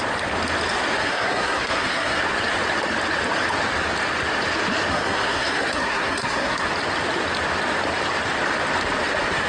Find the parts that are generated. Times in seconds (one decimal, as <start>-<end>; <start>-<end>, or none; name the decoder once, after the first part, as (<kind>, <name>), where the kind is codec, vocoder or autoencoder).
1.0-2.2 (codec, SNAC); 4.9-6.7

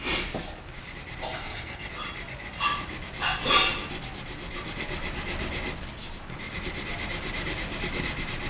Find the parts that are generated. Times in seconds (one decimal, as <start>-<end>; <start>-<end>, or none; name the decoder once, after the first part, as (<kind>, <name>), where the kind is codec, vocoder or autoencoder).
1.4-1.9 (codec, SNAC)

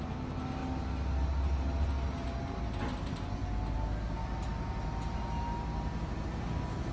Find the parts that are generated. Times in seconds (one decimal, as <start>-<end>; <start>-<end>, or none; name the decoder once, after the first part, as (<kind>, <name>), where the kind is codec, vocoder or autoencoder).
none

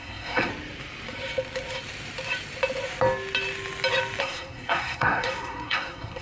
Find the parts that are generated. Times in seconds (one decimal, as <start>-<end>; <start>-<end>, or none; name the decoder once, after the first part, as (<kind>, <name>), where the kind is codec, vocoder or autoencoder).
0.0-0.5 (codec, SNAC); 4.2-6.2